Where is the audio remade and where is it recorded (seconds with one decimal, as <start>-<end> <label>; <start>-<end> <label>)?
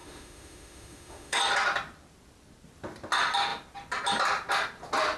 0.0-1.4 remade; 1.4-5.2 recorded